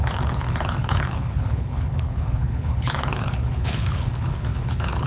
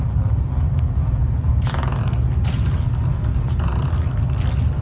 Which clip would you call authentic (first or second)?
second